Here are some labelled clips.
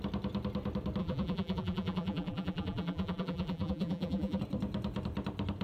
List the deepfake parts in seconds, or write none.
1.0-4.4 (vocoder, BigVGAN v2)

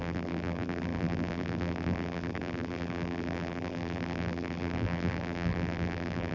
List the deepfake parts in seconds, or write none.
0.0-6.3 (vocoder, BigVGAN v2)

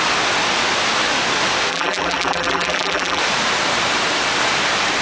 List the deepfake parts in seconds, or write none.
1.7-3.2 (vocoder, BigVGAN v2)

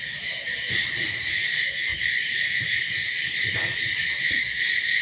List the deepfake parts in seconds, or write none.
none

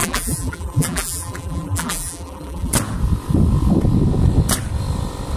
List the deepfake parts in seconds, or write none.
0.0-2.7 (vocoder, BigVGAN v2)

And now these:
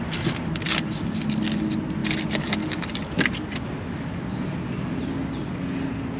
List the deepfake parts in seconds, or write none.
none